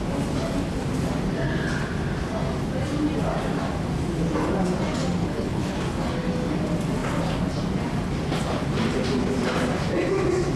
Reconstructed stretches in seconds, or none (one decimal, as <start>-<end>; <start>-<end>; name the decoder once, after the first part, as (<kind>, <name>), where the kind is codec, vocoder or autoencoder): 5.2-5.8 (codec, HILCodec)